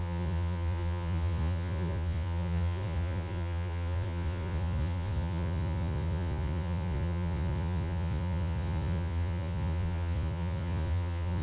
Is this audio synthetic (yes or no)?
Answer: yes